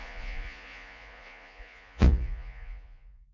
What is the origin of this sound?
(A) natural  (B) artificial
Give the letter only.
B